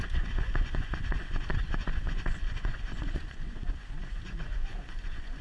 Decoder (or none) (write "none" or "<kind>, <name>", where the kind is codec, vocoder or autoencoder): vocoder, Vocos